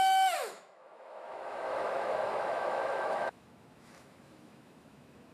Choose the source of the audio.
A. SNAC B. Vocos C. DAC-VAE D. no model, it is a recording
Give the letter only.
C